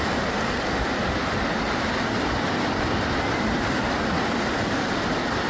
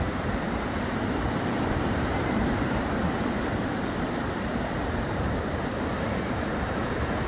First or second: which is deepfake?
second